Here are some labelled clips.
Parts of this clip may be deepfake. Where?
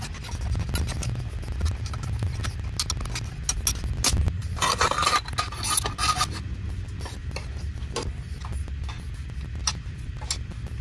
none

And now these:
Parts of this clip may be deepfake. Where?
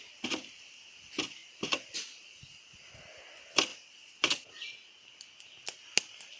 1.4-2.5 (vocoder, BigVGAN v2); 3.7-4.5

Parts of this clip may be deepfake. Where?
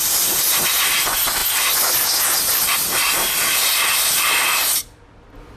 none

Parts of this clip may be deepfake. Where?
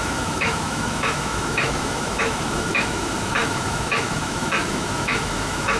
0.0-5.8 (autoencoder, DAC-VAE)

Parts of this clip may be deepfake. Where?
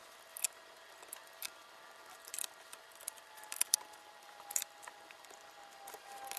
1.6-5.4 (vocoder, BigVGAN v2)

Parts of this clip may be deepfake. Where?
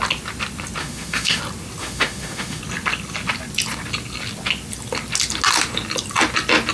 0.8-1.4 (autoencoder, DAC-VAE); 1.8-2.6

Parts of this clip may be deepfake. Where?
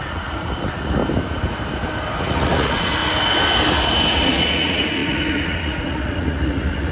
0.0-1.0 (vocoder, Vocos); 2.2-3.0; 4.1-6.9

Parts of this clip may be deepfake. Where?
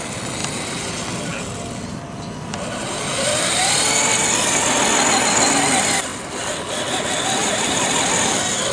0.4-0.9 (vocoder, BigVGAN v2); 7.4-7.9